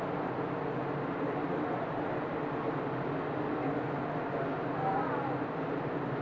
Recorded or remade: recorded